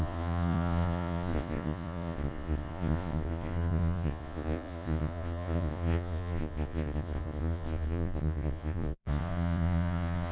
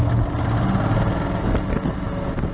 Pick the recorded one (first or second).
second